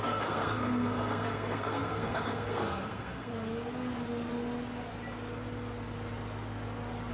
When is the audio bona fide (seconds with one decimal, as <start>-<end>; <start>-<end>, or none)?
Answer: 3.3-7.1